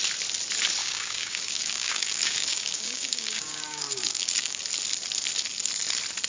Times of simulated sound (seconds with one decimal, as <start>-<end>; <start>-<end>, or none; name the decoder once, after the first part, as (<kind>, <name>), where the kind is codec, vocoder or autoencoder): 0.8-4.6 (codec, DAC)

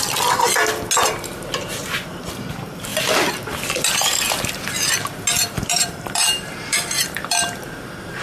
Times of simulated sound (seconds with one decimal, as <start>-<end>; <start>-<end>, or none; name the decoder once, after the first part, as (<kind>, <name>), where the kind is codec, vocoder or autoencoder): 5.4-8.2 (vocoder, BigVGAN v2)

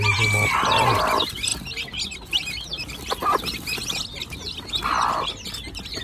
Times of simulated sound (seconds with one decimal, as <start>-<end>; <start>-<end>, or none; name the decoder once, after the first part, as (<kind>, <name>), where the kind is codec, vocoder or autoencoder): none

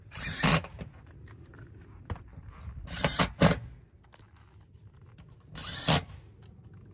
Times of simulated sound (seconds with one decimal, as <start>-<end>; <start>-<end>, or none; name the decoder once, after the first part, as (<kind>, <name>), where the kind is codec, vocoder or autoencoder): 0.0-3.2 (vocoder, BigVGAN v2)

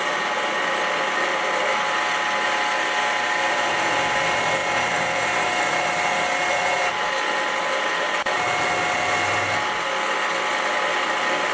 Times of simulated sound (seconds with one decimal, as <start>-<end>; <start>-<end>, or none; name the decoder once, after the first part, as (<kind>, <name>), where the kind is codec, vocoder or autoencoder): none

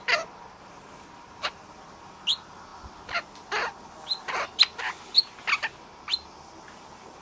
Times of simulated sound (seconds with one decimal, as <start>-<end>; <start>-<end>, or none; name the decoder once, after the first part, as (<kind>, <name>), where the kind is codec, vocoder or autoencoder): none

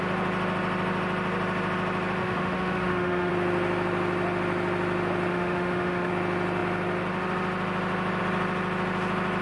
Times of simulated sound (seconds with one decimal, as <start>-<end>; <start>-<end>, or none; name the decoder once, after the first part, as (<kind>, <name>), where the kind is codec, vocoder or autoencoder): 2.2-3.3 (autoencoder, DAC-VAE); 5.3-6.1